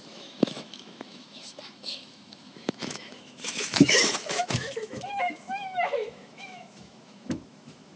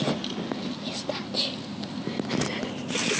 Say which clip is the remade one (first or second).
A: first